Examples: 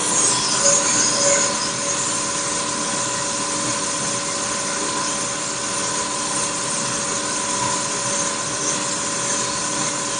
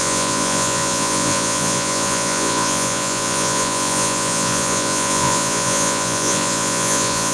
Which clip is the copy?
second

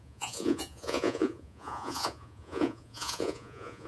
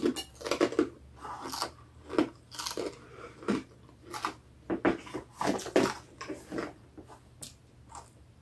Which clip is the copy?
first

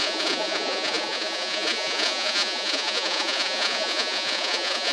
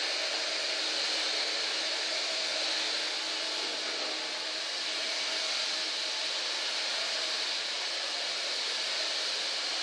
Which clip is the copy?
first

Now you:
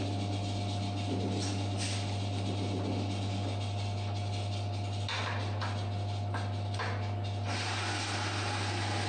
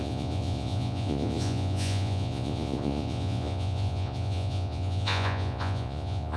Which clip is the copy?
second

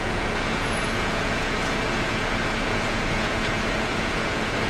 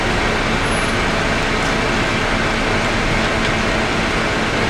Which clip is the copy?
first